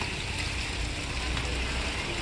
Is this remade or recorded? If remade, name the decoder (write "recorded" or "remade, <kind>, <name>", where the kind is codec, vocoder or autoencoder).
recorded